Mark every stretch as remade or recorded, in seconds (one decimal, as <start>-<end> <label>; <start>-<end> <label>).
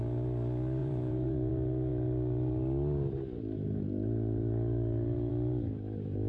0.0-0.8 recorded; 0.8-1.5 remade; 1.5-6.3 recorded